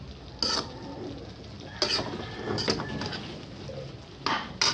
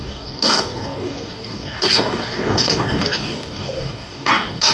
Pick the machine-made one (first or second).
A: second